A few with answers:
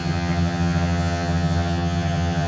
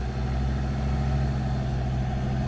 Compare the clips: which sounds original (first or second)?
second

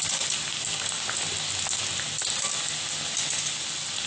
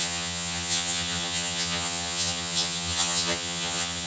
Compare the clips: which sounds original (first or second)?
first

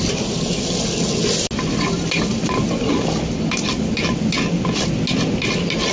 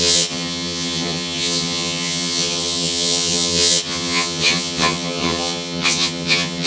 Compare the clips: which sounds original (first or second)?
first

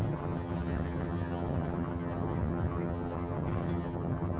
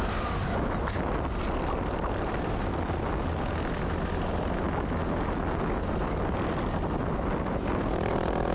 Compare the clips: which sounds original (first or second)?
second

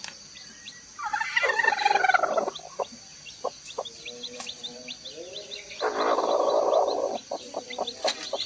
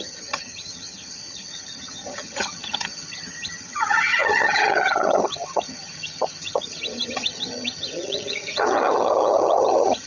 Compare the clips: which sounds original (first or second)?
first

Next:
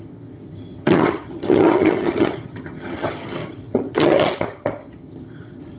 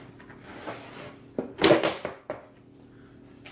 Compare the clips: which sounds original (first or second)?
second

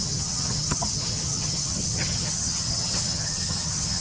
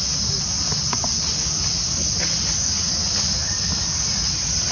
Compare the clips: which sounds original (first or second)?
second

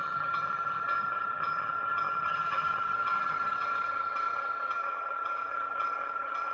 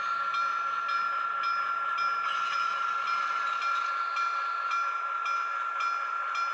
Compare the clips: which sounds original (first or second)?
second